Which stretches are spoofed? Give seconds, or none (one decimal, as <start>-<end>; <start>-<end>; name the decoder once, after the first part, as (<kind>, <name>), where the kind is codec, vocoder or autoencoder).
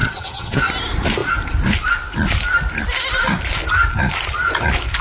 0.0-0.6 (vocoder, HiFi-GAN)